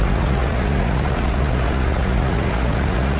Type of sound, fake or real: fake